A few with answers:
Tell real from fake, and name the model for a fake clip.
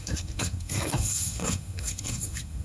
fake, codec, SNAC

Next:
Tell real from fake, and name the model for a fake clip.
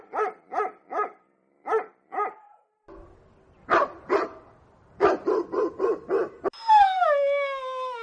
real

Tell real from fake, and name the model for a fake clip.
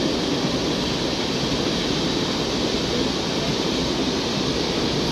real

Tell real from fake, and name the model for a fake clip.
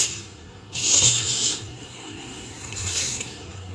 fake, codec, SNAC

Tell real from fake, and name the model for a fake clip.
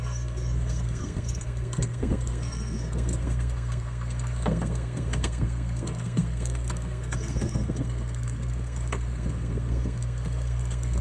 fake, codec, SNAC